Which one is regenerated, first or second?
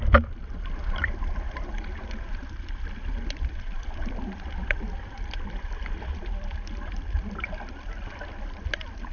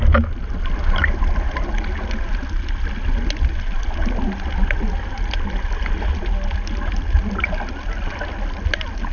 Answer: first